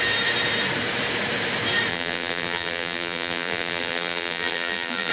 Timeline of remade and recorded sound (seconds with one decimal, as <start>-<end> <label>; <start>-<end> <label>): 0.0-1.9 recorded; 1.9-5.1 remade